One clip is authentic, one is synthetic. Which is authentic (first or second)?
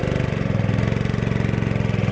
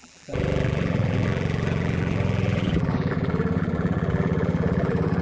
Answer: first